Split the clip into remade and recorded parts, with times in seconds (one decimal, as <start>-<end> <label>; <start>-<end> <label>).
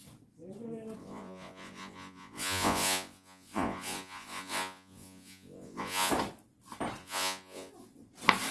0.0-1.0 recorded; 1.0-6.1 remade; 6.1-7.0 recorded; 7.0-7.7 remade; 7.7-8.5 recorded